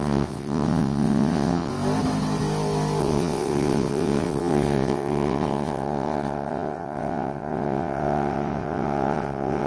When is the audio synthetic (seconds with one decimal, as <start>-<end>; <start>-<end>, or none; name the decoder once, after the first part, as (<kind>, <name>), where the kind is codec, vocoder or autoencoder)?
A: 0.0-1.7 (vocoder, WaveNeXt); 3.0-9.7